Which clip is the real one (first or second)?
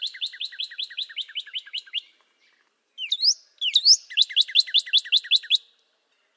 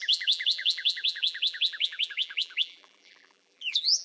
first